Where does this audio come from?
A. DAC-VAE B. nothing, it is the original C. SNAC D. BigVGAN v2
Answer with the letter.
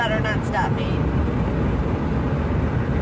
B